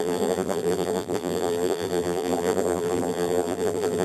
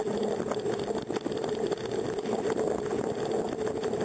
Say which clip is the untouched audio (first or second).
second